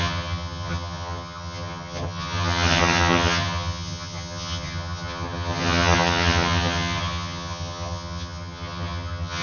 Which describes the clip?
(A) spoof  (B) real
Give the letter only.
A